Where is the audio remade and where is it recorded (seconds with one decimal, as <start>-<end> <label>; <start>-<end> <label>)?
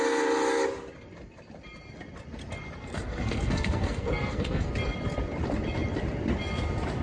0.0-2.8 recorded; 2.8-4.7 remade; 4.7-7.0 recorded